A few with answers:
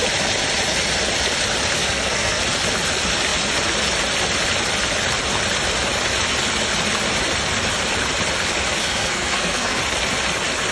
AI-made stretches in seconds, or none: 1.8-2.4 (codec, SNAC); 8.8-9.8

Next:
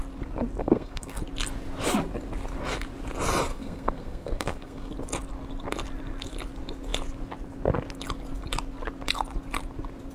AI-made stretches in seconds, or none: 0.6-1.2 (codec, SNAC); 3.5-4.9

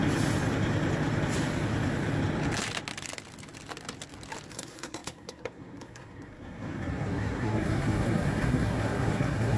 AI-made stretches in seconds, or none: 4.5-9.6 (codec, SNAC)